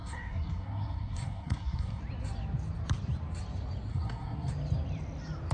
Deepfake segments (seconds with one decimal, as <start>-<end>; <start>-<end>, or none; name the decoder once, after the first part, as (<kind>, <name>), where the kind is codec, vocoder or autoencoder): 0.0-2.0 (codec, SNAC); 3.9-4.5